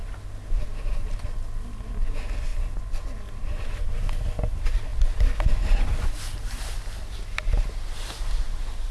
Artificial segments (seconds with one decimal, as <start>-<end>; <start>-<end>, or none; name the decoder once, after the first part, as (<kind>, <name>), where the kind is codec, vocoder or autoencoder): none